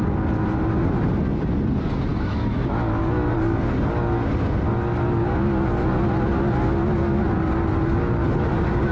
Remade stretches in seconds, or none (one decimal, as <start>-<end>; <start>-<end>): 2.1-3.3